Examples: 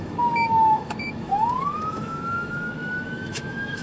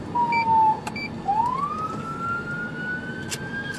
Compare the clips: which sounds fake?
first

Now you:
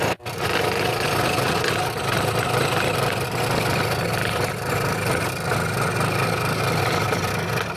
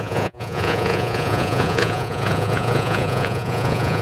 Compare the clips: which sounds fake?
second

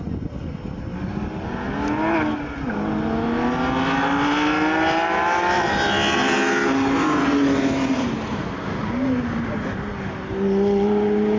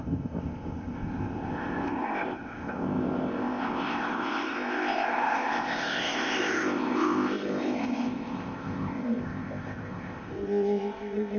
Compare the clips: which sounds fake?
second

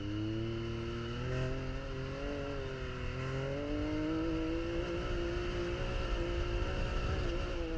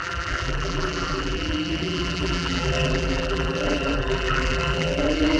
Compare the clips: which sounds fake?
second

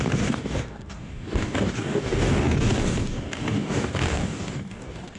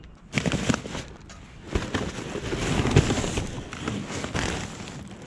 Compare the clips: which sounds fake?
first